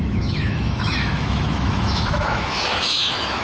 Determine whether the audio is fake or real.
fake